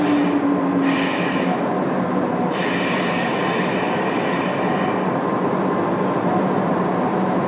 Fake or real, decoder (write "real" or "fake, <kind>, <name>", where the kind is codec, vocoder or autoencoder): real